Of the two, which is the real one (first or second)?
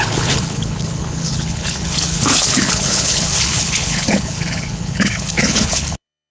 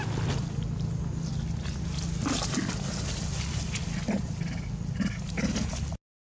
second